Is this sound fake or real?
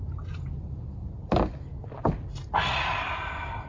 real